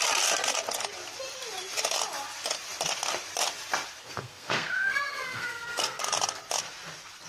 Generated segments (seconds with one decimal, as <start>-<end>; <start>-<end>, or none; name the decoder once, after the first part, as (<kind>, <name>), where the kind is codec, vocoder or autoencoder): 4.0-6.0 (codec, SNAC)